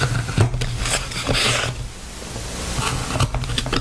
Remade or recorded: recorded